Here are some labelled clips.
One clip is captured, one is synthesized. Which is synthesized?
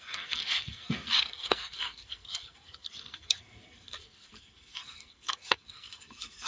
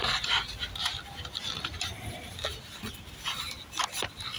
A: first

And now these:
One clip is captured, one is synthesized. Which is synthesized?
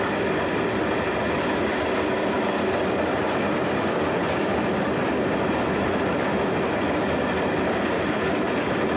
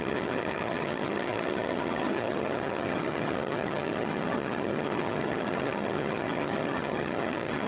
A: second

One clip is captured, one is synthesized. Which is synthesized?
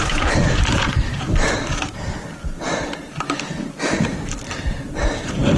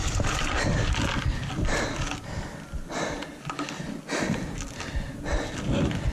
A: first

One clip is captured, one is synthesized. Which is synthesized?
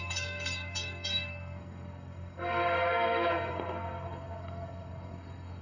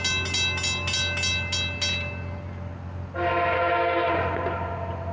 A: first